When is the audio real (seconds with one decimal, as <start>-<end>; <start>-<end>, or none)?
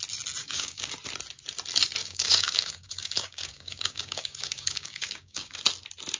0.0-0.4; 0.9-2.0; 5.6-6.2